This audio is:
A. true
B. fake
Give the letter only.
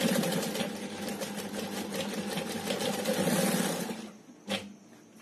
A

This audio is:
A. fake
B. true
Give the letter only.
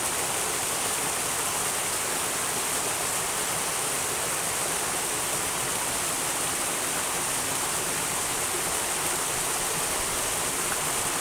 B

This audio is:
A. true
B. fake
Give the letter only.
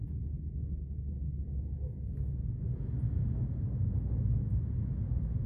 A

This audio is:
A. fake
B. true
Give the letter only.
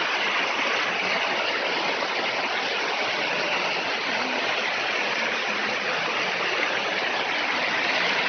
B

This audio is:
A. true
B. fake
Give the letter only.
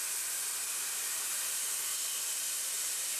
A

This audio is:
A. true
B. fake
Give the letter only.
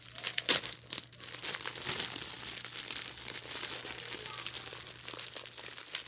A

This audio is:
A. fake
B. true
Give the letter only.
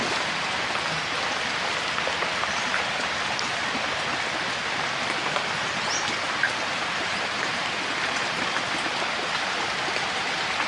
B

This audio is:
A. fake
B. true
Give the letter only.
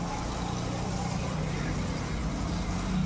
B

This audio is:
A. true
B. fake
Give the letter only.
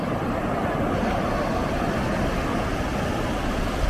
A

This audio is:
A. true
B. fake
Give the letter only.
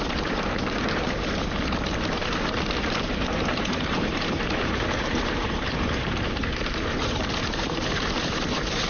B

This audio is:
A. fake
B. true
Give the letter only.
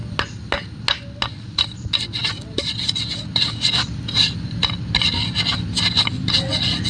B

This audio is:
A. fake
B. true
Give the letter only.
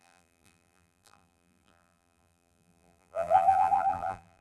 A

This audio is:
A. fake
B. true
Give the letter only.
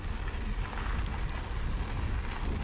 B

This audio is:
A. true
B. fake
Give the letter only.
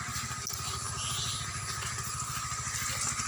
A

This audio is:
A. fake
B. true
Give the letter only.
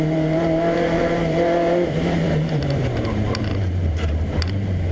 A